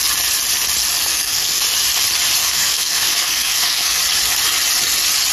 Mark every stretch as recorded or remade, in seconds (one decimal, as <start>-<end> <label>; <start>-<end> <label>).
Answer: 0.0-1.0 recorded; 1.0-1.6 remade; 1.6-2.4 recorded; 2.4-4.0 remade; 4.0-5.3 recorded